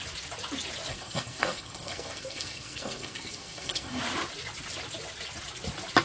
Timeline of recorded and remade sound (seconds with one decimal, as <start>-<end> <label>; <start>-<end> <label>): 0.0-0.9 recorded; 0.9-4.0 remade; 4.0-6.0 recorded